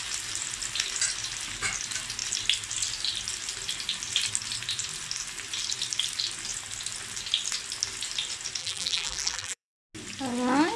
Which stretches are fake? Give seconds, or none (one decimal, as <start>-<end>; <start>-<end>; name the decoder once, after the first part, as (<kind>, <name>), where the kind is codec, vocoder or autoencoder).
8.6-9.8 (vocoder, BigVGAN v2)